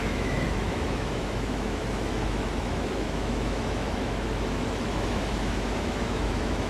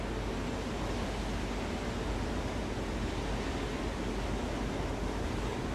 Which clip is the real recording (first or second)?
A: second